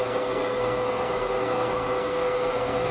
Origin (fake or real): fake